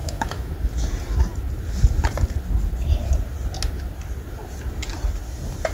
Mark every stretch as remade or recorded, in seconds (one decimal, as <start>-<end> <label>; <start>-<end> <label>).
0.0-0.5 remade; 0.5-5.7 recorded

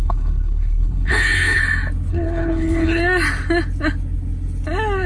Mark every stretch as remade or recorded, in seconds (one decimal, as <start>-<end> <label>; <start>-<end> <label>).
0.0-1.6 remade; 1.6-2.1 recorded; 2.1-3.0 remade; 3.0-5.1 recorded

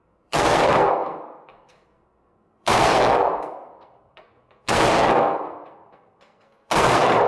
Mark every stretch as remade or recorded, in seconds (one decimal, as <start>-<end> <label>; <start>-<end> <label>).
0.0-7.3 remade

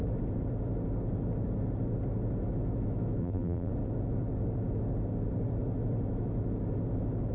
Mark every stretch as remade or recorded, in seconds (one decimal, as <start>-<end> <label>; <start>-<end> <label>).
0.0-3.2 recorded; 3.2-3.7 remade; 3.7-7.3 recorded

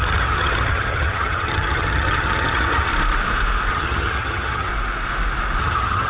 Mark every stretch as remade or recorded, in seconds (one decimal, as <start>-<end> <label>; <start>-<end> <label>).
0.0-2.9 remade; 2.9-3.7 recorded; 3.7-4.7 remade; 4.7-5.6 recorded; 5.6-6.1 remade